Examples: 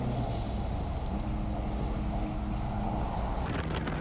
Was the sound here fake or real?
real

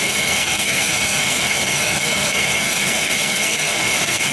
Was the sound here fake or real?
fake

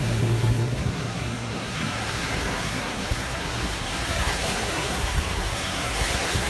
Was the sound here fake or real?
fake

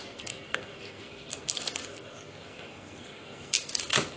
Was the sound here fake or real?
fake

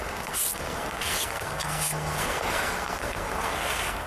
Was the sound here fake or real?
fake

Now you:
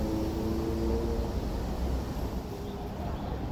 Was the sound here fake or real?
real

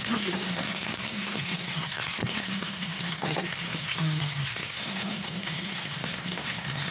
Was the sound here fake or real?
fake